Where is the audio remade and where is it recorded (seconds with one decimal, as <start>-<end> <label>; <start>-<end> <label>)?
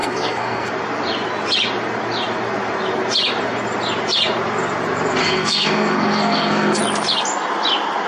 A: 0.0-0.7 remade; 0.7-5.2 recorded; 5.2-6.8 remade; 6.8-8.1 recorded